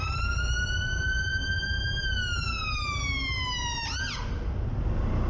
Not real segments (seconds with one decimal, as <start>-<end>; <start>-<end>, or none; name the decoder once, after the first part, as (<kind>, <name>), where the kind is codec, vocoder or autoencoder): none